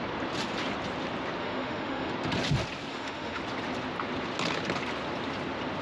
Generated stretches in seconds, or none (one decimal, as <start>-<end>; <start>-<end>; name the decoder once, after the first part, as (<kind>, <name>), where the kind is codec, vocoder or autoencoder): 1.4-2.1 (autoencoder, DAC-VAE); 2.9-3.4